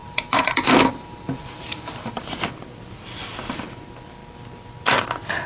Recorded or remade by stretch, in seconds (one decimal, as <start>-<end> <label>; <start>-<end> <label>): 0.0-2.4 remade; 2.4-5.5 recorded